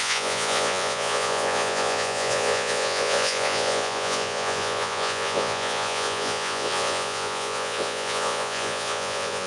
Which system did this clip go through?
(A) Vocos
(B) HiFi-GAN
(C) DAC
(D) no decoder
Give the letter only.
A